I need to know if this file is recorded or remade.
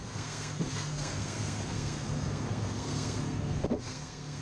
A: remade